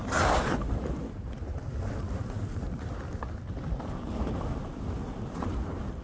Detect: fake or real real